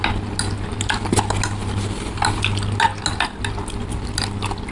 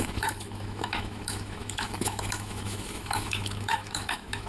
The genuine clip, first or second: first